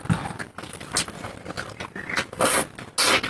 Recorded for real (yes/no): yes